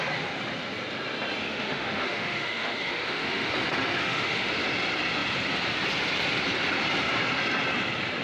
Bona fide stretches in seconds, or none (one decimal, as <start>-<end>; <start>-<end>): 0.0-1.4; 3.5-4.0; 4.5-8.2